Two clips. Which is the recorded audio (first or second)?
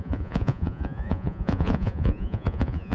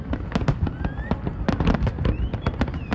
second